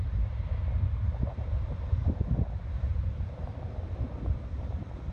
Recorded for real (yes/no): yes